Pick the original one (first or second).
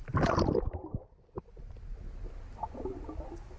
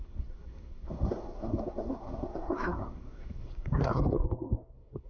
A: first